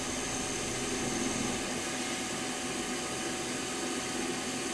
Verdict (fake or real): real